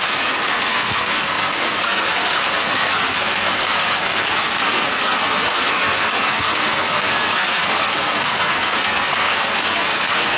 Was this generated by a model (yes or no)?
yes